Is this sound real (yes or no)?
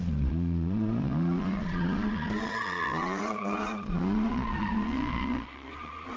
no